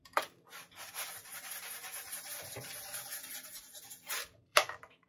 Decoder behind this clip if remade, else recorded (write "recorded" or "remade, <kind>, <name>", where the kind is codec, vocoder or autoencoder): remade, vocoder, BigVGAN v2